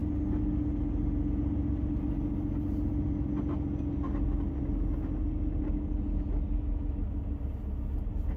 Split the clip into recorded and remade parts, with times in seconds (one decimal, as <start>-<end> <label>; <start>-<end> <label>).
0.0-8.4 recorded